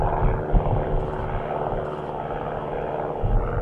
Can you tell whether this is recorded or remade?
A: recorded